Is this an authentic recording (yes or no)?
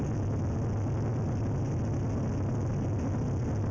yes